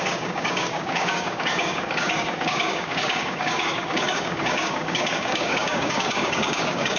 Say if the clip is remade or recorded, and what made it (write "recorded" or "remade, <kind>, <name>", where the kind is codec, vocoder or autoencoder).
remade, codec, DAC